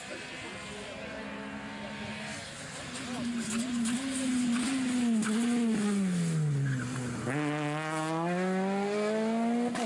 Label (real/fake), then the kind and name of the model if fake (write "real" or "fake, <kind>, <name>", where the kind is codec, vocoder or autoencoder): real